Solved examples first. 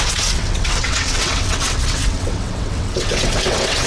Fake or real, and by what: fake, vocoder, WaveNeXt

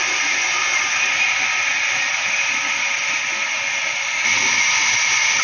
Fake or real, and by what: real